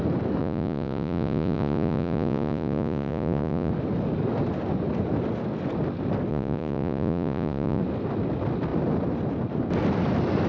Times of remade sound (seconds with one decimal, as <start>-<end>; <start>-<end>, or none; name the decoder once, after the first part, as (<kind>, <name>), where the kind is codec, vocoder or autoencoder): 0.4-3.7 (vocoder, Vocos); 6.3-7.8